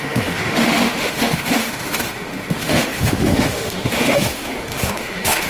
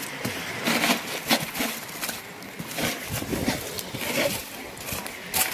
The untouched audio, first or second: second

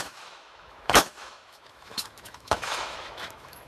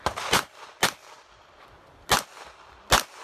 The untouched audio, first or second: second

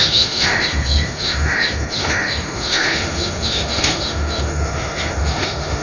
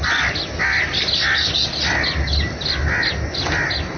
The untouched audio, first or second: second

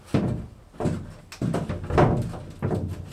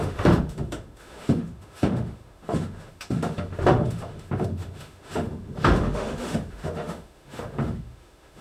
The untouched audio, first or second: first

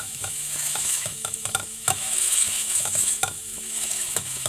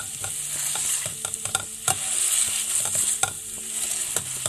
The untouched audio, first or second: second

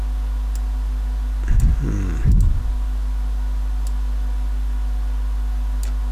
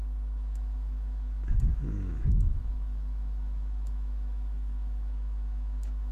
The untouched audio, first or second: first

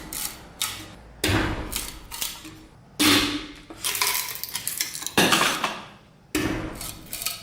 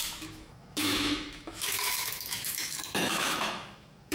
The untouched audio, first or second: first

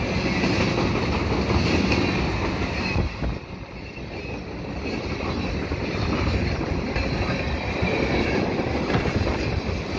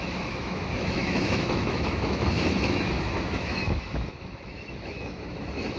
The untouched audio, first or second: first